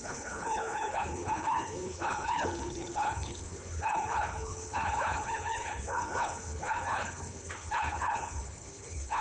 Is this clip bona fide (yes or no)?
no